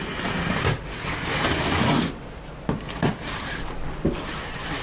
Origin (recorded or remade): recorded